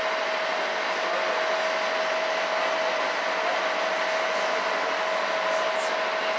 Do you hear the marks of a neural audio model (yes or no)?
no